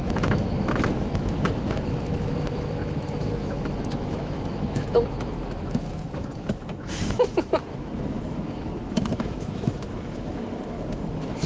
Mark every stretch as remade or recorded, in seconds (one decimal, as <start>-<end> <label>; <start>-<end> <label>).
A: 0.0-11.5 remade